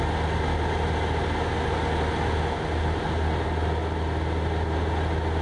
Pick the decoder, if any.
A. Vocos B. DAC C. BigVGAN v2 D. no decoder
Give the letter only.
D